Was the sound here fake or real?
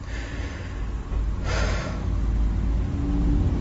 real